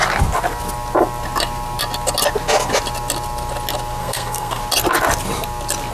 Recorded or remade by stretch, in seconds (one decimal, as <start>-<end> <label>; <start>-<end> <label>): 0.0-4.0 recorded; 4.0-4.6 remade; 4.6-5.9 recorded